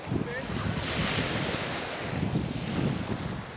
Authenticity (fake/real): real